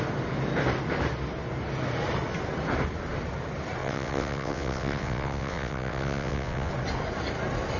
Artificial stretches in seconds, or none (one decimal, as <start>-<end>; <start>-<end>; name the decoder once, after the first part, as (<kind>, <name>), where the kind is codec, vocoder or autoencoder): 3.8-6.7 (vocoder, WaveNeXt)